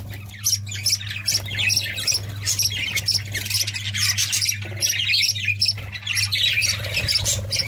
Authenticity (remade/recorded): recorded